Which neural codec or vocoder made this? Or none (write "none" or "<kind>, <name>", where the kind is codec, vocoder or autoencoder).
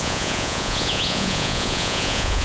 vocoder, Vocos